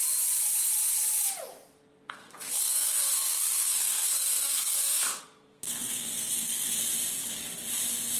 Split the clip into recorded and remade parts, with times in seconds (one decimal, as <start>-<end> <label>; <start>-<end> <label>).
0.0-2.0 recorded; 2.0-6.8 remade; 6.8-8.2 recorded